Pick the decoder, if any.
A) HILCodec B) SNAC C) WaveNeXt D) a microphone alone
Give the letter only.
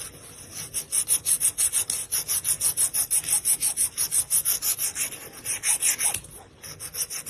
D